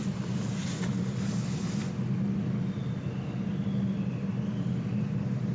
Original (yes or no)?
yes